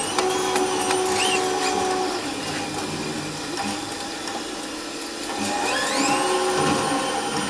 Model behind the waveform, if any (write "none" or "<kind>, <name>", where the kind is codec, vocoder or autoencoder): none